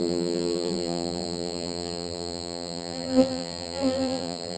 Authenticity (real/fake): fake